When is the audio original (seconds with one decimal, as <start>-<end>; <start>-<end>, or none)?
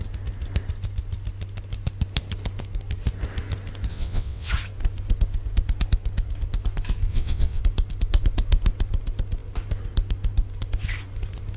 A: 0.0-3.9; 4.5-7.1; 7.6-11.6